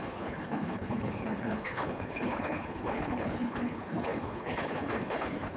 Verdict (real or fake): fake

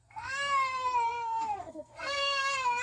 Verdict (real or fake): fake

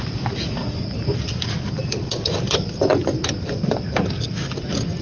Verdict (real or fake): real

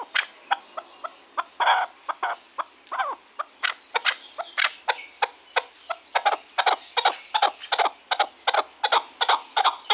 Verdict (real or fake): real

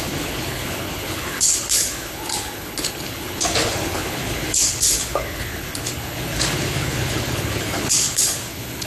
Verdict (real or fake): fake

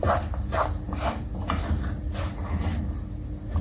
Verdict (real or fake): real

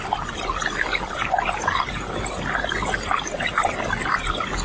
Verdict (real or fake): real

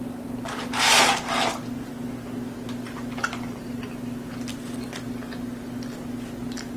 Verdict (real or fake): real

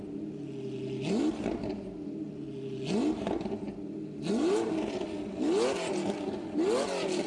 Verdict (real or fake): real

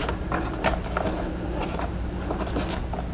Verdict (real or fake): real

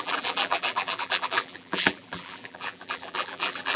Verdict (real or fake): fake